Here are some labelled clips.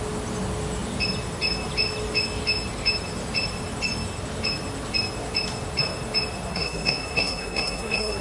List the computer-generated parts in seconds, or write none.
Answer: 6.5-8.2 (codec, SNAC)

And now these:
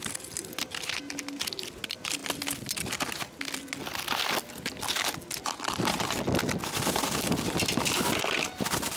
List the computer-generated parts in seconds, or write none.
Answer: none

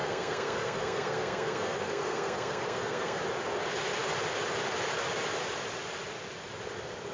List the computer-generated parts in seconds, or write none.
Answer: 0.0-3.2 (codec, SNAC)

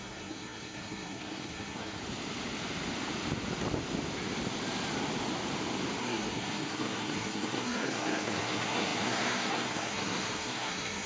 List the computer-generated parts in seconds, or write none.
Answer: 0.0-2.0 (codec, SNAC); 6.0-11.1

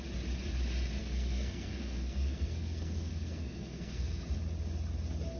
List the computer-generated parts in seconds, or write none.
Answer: 1.0-4.2 (codec, SNAC)

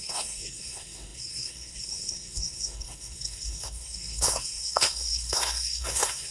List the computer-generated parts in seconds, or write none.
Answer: 0.0-6.3 (codec, SNAC)